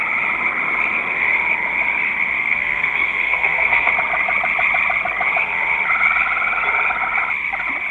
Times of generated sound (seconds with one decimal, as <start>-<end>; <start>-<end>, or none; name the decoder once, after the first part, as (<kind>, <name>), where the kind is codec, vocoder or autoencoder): 2.4-3.9 (codec, SNAC)